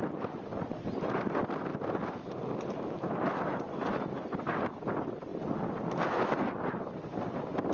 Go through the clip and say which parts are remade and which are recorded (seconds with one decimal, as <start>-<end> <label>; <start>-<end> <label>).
0.0-7.7 recorded